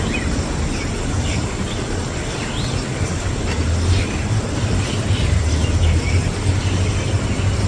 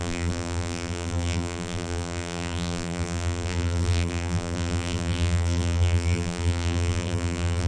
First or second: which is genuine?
first